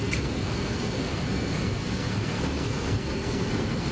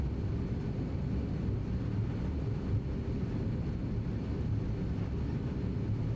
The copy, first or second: first